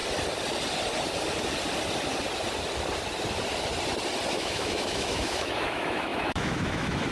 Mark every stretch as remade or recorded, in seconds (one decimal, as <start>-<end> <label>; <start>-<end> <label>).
0.0-4.3 recorded; 4.3-7.1 remade